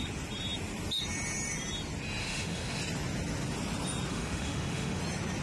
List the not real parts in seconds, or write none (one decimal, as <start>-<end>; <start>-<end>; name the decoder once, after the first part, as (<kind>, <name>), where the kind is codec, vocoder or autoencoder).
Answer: 2.2-2.8 (autoencoder, DAC-VAE); 4.1-5.0